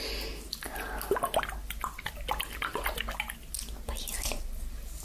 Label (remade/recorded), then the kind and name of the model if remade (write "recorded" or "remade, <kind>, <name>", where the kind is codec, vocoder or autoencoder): recorded